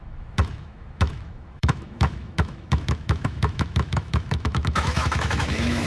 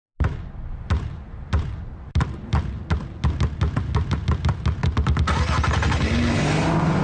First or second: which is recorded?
second